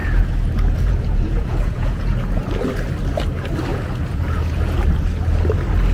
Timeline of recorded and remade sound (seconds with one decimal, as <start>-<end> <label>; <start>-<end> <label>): 0.0-2.4 remade; 2.4-3.7 recorded; 3.7-4.8 remade; 4.8-5.9 recorded